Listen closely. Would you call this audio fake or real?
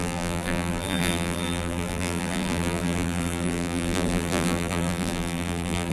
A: fake